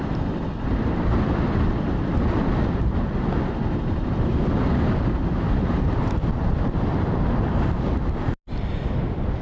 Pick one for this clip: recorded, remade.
recorded